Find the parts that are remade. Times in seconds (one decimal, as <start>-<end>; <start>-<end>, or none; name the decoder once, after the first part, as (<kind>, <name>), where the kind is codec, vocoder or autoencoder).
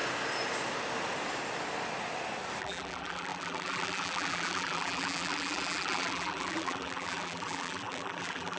2.6-8.6 (vocoder, BigVGAN v2)